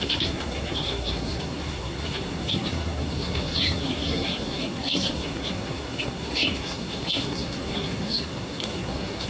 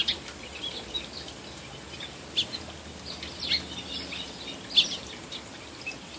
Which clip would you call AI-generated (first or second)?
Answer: first